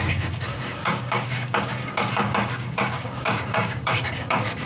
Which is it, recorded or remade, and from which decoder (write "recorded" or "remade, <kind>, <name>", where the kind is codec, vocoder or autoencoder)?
remade, codec, DAC